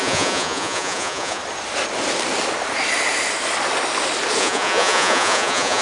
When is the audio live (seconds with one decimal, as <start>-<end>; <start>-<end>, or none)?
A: 1.4-4.4